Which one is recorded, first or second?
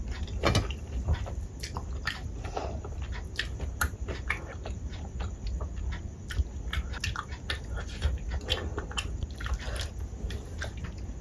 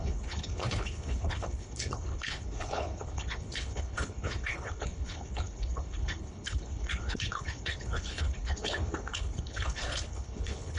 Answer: first